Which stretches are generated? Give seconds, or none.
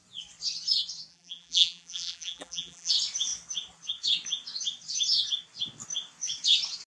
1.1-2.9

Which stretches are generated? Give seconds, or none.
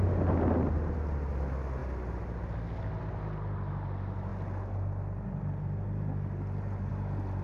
none